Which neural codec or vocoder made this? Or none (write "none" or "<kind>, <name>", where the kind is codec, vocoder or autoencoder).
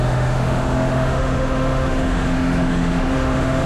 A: autoencoder, DAC-VAE